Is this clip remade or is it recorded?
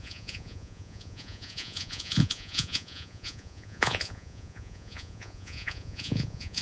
remade